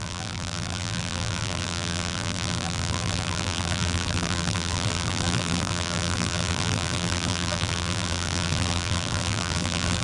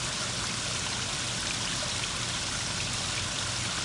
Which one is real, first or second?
second